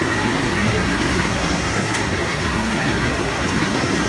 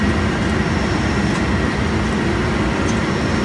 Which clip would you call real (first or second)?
second